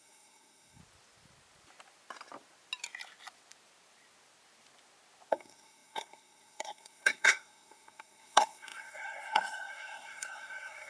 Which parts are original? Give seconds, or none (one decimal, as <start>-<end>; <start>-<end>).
0.8-5.3

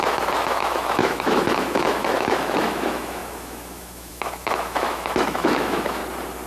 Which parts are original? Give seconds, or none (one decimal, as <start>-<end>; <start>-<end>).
6.0-6.5

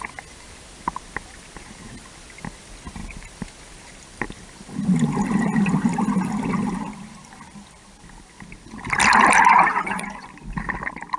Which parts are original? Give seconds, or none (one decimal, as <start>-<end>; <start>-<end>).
0.0-9.7; 10.3-11.2

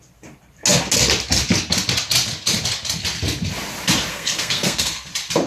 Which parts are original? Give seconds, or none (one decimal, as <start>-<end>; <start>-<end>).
0.0-4.1; 5.1-5.5

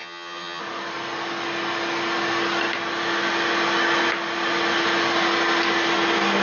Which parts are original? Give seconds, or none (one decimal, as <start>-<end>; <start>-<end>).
0.6-6.4